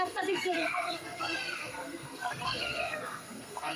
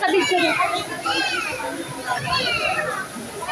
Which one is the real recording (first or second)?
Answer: second